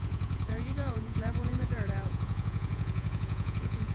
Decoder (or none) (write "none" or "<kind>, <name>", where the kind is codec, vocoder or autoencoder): vocoder, Vocos